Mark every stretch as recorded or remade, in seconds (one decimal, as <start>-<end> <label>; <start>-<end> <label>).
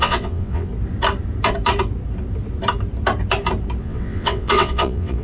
0.0-0.7 remade; 0.7-3.8 recorded; 3.8-5.2 remade